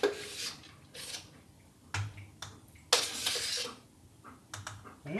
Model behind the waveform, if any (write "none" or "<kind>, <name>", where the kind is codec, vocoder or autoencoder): none